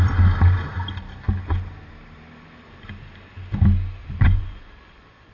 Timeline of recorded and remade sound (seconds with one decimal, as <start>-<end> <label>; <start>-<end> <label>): 0.0-4.0 recorded; 4.0-5.3 remade